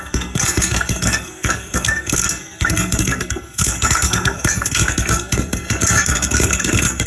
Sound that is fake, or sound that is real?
fake